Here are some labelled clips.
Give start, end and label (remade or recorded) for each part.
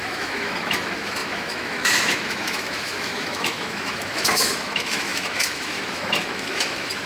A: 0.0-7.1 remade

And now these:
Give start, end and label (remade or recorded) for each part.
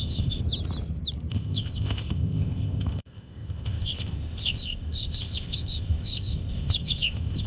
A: 0.0-0.4 remade; 0.4-1.3 recorded; 1.3-7.5 remade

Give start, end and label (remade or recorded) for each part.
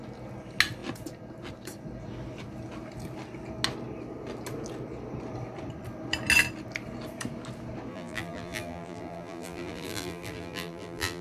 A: 0.0-7.9 recorded; 7.9-11.2 remade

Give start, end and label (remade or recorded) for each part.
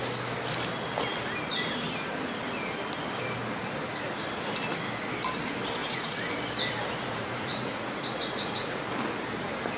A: 0.0-5.8 recorded; 5.8-6.3 remade; 6.3-6.8 recorded; 6.8-8.8 remade; 8.8-9.8 recorded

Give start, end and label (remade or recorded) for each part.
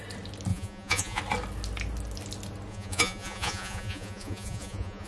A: 0.0-0.5 recorded; 0.5-1.2 remade; 1.2-2.7 recorded; 2.7-5.1 remade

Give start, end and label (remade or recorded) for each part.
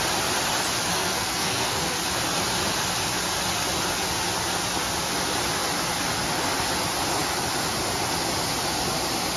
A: 0.0-0.9 recorded; 0.9-2.0 remade; 2.0-9.4 recorded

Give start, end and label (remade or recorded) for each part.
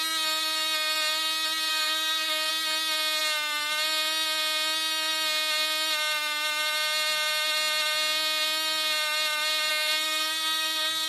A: 0.0-1.7 recorded; 1.7-2.5 remade; 2.5-9.7 recorded; 9.7-11.1 remade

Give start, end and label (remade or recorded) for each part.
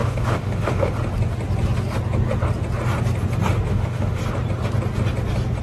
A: 0.0-0.9 remade; 0.9-3.7 recorded; 3.7-4.2 remade; 4.2-5.6 recorded